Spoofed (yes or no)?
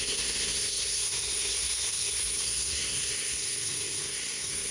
yes